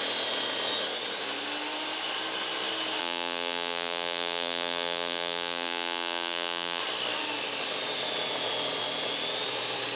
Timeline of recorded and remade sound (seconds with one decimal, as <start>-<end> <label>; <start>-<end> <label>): 0.0-3.0 recorded; 3.0-6.8 remade; 6.8-10.0 recorded